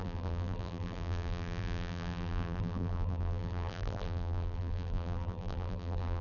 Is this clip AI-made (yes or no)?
yes